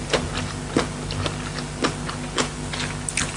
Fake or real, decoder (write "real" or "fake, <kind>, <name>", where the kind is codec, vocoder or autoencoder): real